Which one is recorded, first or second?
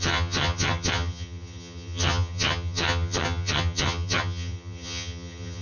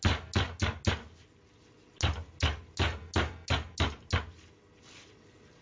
second